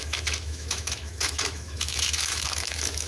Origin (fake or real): fake